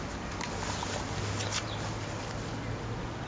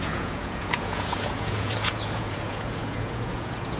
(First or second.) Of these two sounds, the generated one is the second